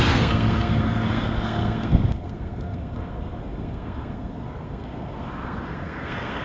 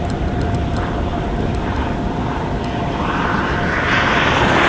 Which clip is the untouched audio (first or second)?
second